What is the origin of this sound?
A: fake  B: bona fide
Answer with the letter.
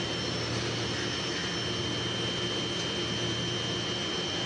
B